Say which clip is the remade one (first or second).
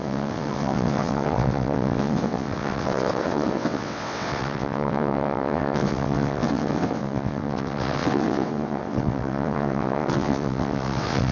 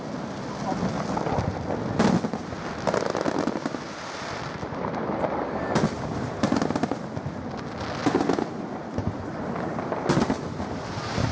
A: first